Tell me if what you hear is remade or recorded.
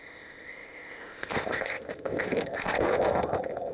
remade